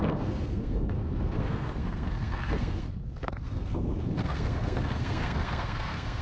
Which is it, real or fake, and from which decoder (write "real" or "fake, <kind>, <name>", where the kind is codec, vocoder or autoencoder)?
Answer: fake, codec, SNAC